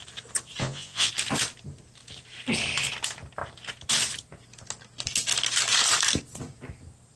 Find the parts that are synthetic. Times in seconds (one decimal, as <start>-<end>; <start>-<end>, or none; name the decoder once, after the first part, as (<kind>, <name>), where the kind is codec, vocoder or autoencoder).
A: 0.6-1.1 (vocoder, Vocos)